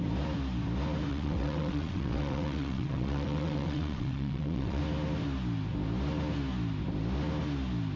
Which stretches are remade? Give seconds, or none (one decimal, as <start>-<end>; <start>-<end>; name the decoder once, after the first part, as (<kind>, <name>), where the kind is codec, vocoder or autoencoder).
1.1-4.8 (vocoder, WaveNeXt)